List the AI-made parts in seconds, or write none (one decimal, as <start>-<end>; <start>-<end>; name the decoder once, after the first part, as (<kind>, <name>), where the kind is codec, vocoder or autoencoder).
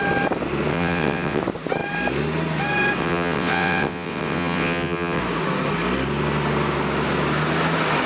0.7-1.4 (vocoder, WaveNeXt); 3.0-5.2